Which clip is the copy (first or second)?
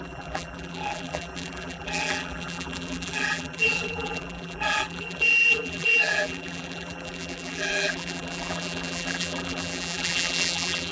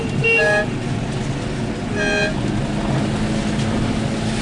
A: first